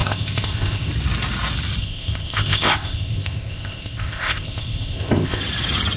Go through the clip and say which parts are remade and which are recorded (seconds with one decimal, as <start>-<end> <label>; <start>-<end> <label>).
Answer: 0.0-0.9 remade; 0.9-1.8 recorded; 1.8-5.4 remade; 5.4-6.0 recorded